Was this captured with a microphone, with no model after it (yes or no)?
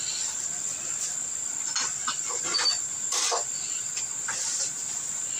yes